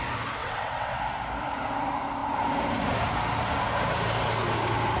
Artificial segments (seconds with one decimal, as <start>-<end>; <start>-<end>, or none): 0.4-1.0

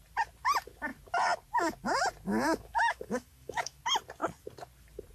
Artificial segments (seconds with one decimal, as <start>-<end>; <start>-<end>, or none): 2.3-3.8

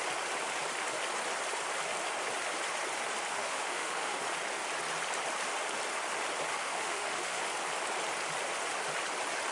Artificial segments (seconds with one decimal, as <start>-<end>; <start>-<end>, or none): 3.3-4.2; 6.5-7.4

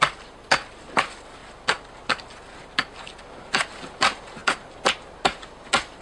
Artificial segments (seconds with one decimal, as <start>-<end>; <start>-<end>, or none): none

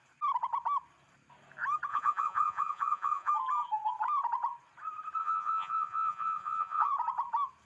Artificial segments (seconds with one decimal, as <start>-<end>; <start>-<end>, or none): 1.9-3.3; 5.2-6.9

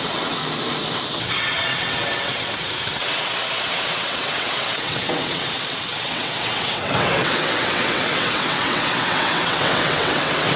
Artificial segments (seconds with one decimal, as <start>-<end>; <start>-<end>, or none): 0.0-0.4; 1.2-10.6

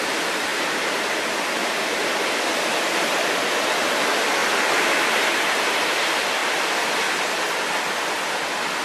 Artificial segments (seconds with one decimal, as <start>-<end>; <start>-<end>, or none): 0.5-1.0; 1.6-3.5; 4.4-5.7